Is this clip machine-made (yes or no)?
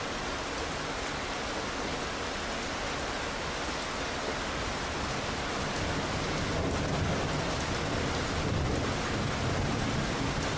no